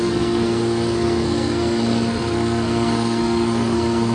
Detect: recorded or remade remade